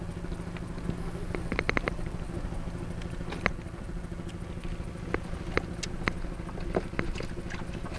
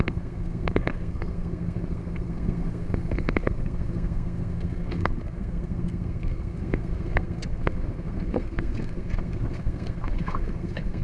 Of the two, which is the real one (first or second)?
first